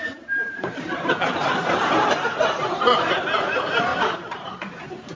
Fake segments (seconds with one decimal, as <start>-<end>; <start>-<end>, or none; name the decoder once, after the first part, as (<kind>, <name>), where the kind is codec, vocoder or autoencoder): 0.4-3.1 (vocoder, BigVGAN v2); 3.9-5.1